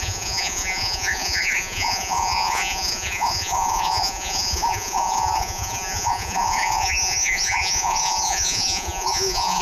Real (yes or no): no